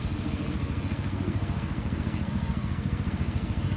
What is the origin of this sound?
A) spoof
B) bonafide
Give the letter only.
A